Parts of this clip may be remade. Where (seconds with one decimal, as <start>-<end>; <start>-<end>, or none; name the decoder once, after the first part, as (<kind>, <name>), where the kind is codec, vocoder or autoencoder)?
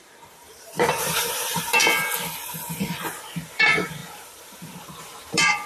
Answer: 0.0-1.8 (vocoder, BigVGAN v2); 3.3-5.7